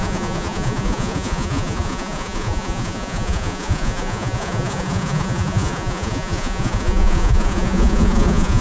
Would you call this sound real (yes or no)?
no